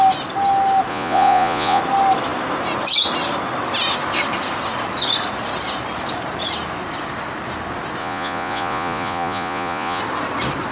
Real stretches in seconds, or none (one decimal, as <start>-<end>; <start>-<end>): 0.0-0.9; 1.8-8.0; 10.0-10.7